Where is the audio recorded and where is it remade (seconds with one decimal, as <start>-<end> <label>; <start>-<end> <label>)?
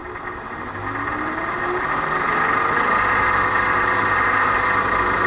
0.0-5.3 recorded